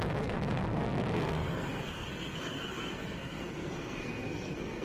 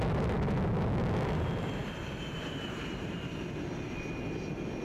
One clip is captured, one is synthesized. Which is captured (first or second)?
second